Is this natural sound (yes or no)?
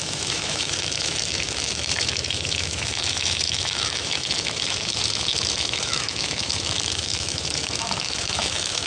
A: no